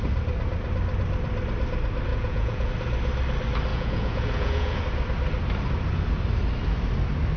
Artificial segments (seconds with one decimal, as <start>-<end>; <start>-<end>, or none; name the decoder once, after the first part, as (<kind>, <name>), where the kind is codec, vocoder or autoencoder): 2.1-2.7 (vocoder, Vocos); 3.7-4.8